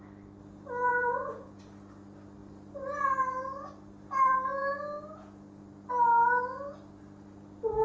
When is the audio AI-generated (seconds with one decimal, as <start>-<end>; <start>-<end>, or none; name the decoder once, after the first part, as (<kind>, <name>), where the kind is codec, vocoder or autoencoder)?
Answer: 0.9-1.6 (vocoder, Vocos)